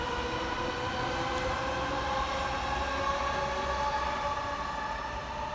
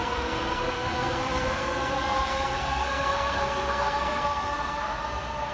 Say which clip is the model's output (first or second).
second